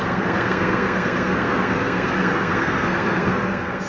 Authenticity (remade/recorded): remade